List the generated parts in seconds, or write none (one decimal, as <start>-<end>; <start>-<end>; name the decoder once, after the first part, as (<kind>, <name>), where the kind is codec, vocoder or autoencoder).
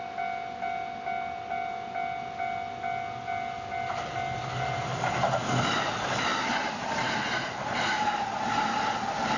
none